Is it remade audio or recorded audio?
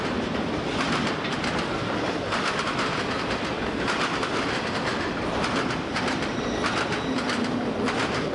remade